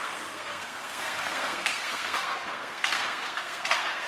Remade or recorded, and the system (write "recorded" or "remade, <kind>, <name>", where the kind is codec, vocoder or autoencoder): remade, codec, SNAC